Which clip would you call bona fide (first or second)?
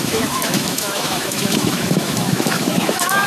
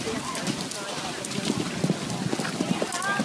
second